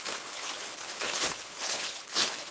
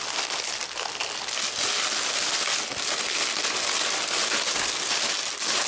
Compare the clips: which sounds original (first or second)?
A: second